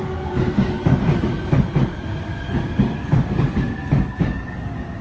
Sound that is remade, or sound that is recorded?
remade